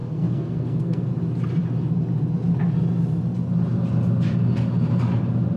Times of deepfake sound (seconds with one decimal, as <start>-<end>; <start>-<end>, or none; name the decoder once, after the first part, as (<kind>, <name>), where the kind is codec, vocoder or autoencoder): 0.0-1.1 (codec, SNAC)